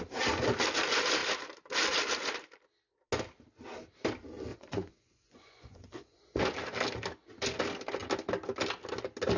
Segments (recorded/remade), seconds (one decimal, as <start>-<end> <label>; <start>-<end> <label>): 0.0-4.5 recorded; 4.5-6.4 remade; 6.4-9.4 recorded